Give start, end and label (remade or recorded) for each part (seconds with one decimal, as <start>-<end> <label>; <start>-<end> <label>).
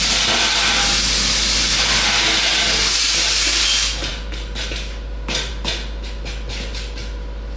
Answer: 0.0-7.6 recorded